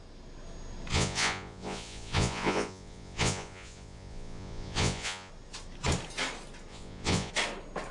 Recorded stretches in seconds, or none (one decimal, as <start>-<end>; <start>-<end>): 0.0-0.9; 5.3-6.7; 7.3-7.9

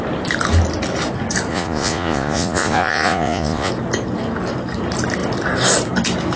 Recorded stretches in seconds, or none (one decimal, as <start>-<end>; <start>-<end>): 0.0-1.5; 3.7-6.4

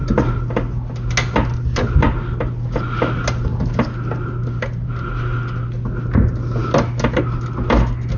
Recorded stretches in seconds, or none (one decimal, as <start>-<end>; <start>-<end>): 0.0-8.2